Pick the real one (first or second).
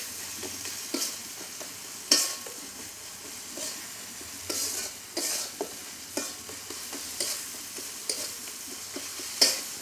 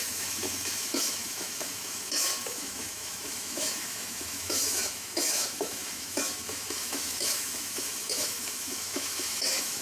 first